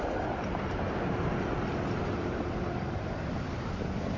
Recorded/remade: recorded